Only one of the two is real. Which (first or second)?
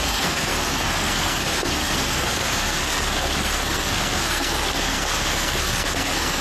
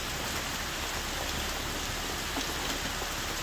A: second